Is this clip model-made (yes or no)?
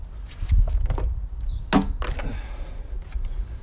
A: no